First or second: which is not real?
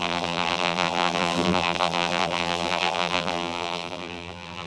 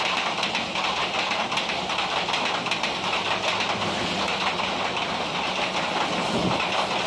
first